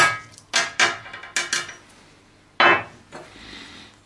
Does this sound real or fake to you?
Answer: real